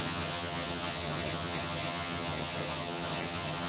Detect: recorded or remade remade